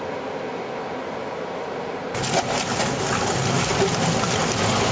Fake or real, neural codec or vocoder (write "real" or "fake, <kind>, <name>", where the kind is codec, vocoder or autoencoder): real